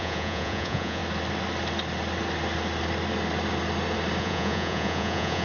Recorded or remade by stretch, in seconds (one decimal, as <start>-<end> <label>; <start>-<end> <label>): 0.0-1.0 remade; 1.0-4.2 recorded; 4.2-5.4 remade